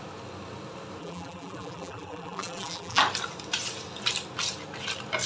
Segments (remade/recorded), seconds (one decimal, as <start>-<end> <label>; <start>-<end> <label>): 0.0-1.0 recorded; 1.0-3.0 remade; 3.0-5.3 recorded

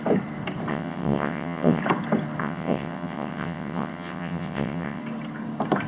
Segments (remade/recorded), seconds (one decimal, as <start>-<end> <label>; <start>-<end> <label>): 0.0-0.7 recorded; 0.7-1.8 remade; 1.8-2.4 recorded; 2.4-5.0 remade; 5.0-5.9 recorded